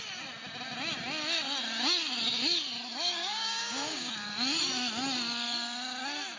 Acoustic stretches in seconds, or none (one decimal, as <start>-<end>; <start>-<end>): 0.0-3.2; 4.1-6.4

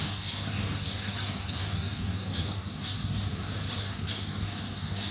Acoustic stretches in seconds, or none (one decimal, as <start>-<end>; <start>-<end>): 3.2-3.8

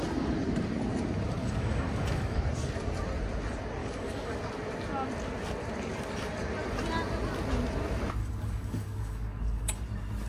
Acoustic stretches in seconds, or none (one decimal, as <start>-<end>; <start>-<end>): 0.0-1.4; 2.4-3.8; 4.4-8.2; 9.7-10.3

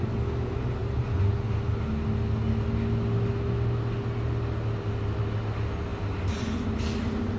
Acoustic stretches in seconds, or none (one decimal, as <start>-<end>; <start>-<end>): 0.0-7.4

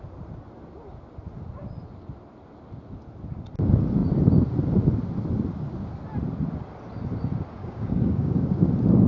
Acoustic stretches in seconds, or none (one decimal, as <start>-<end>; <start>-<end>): 0.0-7.6; 8.7-9.1

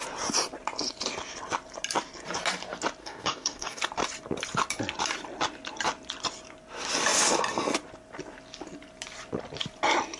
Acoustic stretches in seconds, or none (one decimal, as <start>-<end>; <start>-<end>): 0.0-3.0; 3.8-10.2

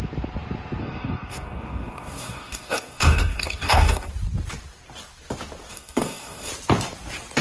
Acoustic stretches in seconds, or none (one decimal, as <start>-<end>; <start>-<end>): 0.0-0.8; 4.1-5.7; 6.5-7.4